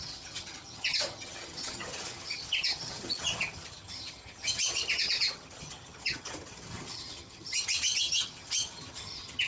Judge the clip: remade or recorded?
remade